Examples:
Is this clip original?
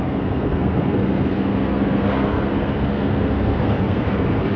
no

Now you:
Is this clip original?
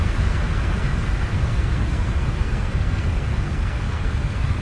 no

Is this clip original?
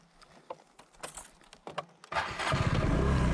yes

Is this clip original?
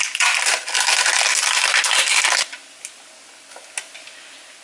yes